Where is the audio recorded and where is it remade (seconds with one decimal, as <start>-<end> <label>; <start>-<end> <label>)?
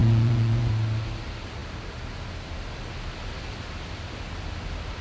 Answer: 0.0-0.7 remade; 0.7-5.0 recorded